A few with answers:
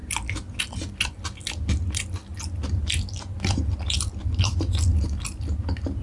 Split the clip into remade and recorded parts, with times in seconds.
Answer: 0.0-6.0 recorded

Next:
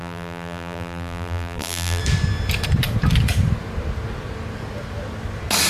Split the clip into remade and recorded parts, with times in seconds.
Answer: 0.0-2.0 remade; 2.0-5.7 recorded

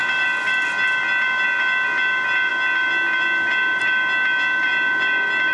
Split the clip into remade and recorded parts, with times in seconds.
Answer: 0.0-5.5 recorded

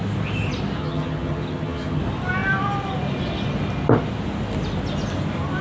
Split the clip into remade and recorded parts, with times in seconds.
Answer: 0.0-0.8 recorded; 0.8-2.0 remade; 2.0-5.6 recorded

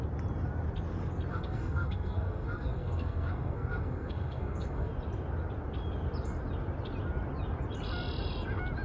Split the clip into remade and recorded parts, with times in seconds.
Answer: 0.0-1.3 recorded; 1.3-4.9 remade; 4.9-8.8 recorded

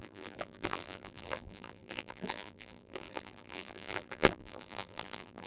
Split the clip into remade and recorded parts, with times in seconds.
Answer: 0.0-5.5 remade

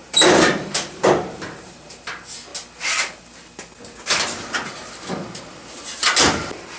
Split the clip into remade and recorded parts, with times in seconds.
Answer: 0.0-2.1 remade; 2.1-6.8 recorded